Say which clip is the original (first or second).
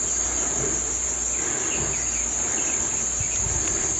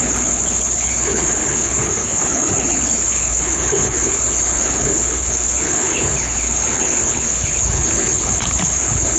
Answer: first